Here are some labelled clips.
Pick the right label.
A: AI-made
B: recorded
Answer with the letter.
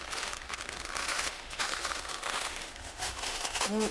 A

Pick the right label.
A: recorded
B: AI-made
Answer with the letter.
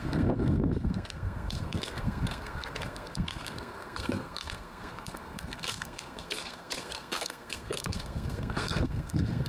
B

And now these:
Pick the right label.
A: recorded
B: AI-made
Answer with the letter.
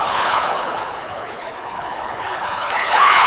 B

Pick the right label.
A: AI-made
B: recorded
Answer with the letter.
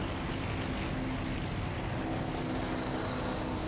B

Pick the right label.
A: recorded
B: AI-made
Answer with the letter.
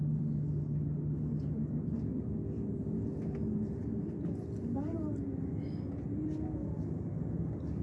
A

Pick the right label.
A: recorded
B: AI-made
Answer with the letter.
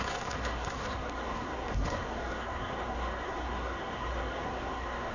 B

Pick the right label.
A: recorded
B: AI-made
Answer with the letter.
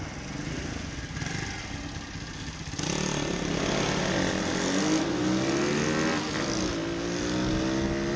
A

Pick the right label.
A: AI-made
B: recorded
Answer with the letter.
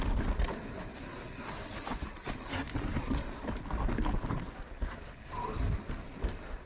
B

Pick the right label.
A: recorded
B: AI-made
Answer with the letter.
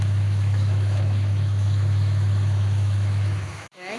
B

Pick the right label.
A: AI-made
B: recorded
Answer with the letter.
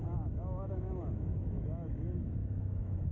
A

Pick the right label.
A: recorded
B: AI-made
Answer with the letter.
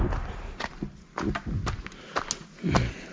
A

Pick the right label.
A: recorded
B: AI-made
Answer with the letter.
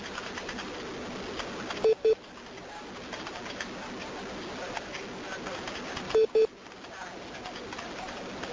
A